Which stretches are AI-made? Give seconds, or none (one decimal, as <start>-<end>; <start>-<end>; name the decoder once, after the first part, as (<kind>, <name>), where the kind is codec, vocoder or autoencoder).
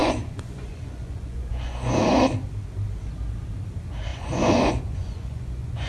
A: 0.0-2.2 (vocoder, Vocos); 4.1-5.9